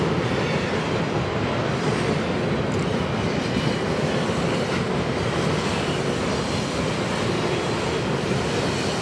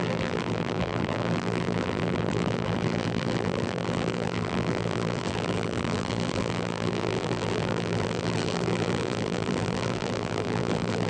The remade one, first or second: second